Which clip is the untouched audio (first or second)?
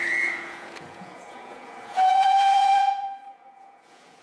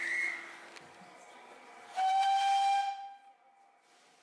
second